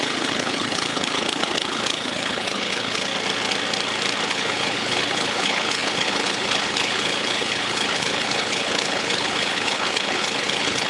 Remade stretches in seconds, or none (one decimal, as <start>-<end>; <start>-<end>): 0.0-3.1; 4.3-10.9